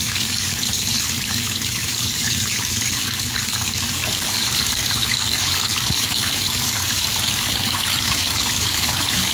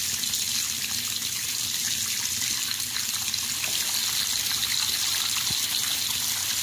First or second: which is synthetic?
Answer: first